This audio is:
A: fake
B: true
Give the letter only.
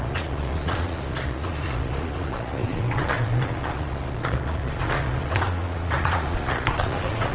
A